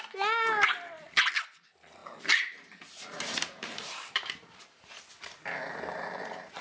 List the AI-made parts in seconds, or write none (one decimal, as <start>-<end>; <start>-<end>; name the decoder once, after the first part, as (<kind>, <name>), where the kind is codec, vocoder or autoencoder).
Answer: 2.0-5.1 (vocoder, BigVGAN v2)